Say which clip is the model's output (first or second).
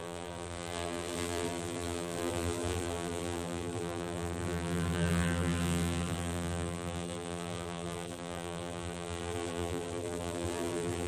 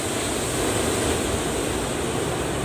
first